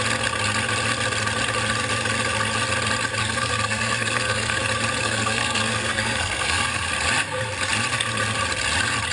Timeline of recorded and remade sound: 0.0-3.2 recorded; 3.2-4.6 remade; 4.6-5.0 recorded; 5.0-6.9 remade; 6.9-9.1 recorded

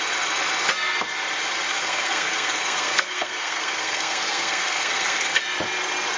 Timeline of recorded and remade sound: 0.0-1.7 recorded; 1.7-5.4 remade; 5.4-6.2 recorded